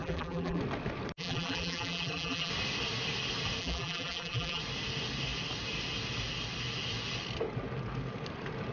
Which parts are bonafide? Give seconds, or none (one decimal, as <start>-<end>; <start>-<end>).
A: 0.6-1.2; 2.5-3.6; 4.6-8.7